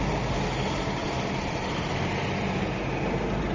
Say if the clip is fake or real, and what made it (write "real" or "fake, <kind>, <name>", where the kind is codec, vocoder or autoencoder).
real